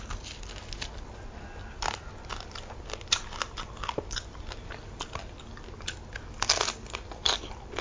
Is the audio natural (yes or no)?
yes